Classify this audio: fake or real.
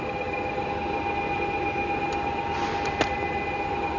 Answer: real